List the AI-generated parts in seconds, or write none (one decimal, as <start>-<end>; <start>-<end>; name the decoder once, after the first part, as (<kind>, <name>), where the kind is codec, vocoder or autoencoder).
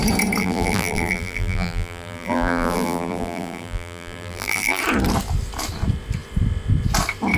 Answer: 0.4-4.8 (vocoder, BigVGAN v2)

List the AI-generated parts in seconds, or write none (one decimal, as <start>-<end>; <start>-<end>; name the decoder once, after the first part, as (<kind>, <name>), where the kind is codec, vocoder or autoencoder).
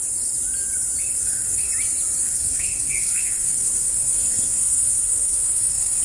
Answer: 1.1-1.7 (codec, SNAC); 2.2-6.0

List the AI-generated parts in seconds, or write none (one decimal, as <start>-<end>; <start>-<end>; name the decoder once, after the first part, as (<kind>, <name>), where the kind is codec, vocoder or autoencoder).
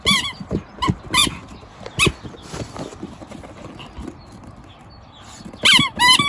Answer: none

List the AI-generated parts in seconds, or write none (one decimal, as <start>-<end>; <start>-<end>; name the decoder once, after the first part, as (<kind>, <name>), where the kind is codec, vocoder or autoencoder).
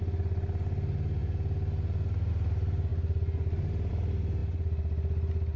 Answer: none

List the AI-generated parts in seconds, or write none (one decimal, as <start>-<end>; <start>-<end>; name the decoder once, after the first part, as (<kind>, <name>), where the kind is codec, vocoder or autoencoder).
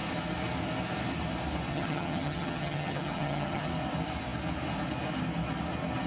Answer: 1.7-3.7 (vocoder, HiFi-GAN)